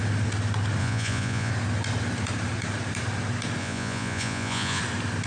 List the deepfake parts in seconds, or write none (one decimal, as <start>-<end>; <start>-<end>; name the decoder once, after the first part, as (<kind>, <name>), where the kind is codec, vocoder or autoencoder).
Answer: 0.8-1.5 (vocoder, Vocos); 3.6-4.8